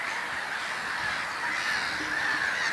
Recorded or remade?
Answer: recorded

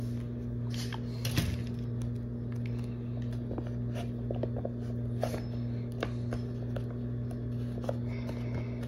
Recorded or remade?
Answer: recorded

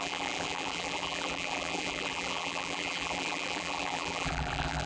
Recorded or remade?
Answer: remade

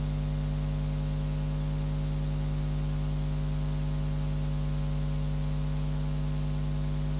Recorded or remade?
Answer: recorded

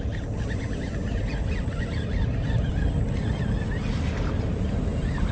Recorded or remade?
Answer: recorded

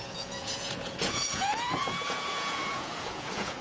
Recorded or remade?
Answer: remade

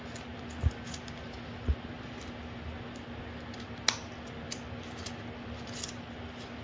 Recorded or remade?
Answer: recorded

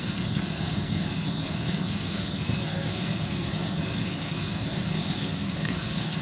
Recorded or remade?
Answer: remade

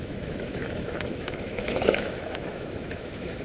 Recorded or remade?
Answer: remade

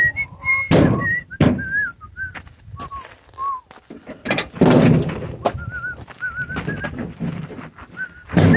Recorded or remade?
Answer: recorded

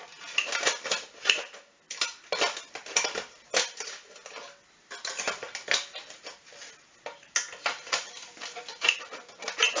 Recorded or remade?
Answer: recorded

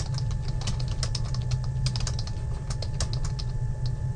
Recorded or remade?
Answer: recorded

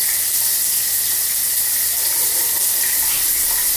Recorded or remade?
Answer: recorded